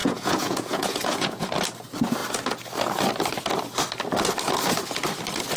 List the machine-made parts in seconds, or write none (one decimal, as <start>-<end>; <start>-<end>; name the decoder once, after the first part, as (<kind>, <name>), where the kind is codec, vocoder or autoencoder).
0.0-1.5 (vocoder, Vocos)